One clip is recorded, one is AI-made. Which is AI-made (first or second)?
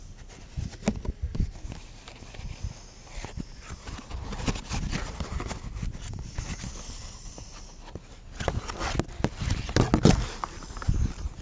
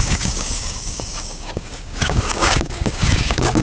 second